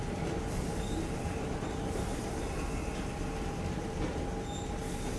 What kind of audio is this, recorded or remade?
recorded